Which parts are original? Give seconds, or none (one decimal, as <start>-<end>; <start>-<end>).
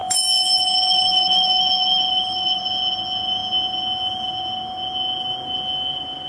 2.6-6.3